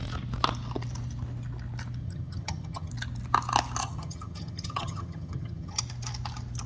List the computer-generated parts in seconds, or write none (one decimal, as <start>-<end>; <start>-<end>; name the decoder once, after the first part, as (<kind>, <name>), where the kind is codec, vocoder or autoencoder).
2.0-2.9 (vocoder, HiFi-GAN); 3.8-5.8